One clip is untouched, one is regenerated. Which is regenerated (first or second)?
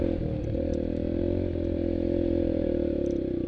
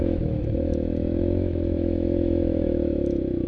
second